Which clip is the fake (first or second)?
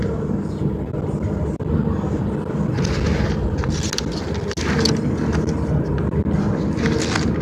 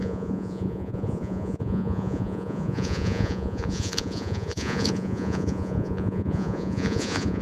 second